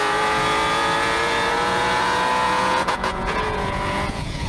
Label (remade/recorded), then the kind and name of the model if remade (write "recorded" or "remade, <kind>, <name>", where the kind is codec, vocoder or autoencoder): remade, vocoder, Vocos